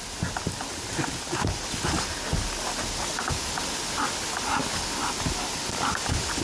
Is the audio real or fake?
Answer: real